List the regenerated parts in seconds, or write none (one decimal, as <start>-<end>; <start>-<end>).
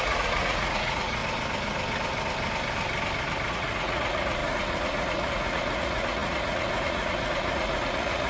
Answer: 0.0-1.2; 3.5-8.3